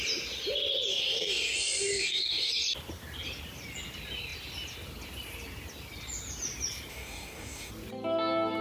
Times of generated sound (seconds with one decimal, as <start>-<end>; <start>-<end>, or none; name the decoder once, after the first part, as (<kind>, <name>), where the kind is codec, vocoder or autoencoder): 0.9-2.5 (codec, DAC); 6.9-7.7